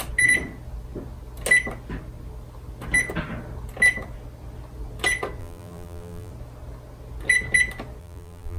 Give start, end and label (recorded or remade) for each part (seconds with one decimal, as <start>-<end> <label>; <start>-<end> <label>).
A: 0.0-5.4 recorded; 5.4-6.3 remade; 6.3-8.0 recorded; 8.0-8.6 remade